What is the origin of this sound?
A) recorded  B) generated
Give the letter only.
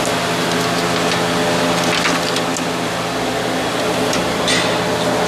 A